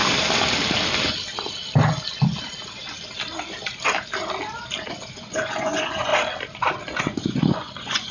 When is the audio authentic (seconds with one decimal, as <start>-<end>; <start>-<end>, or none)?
0.0-4.9; 6.1-7.0